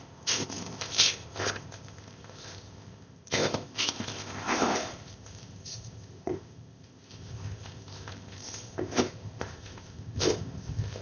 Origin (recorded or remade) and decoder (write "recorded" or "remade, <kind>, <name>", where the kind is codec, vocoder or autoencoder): remade, codec, ZipCodec